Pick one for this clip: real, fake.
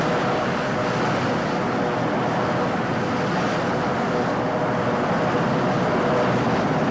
real